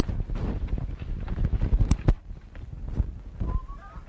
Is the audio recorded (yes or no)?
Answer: yes